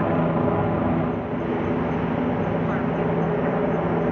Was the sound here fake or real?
real